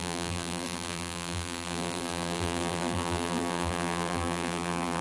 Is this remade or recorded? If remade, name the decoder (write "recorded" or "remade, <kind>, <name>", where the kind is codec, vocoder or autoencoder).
remade, vocoder, BigVGAN v2